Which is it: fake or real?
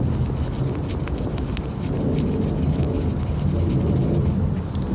real